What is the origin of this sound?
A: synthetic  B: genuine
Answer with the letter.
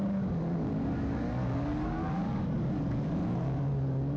A